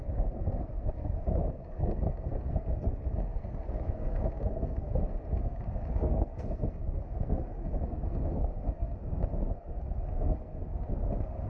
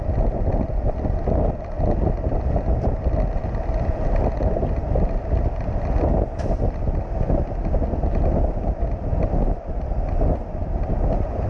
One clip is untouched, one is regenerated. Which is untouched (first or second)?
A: second